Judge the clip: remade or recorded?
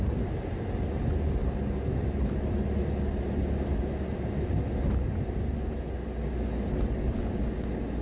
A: recorded